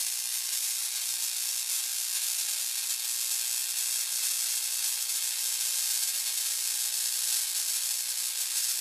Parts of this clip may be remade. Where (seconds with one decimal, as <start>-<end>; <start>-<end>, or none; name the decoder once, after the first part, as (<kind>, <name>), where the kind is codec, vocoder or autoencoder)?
none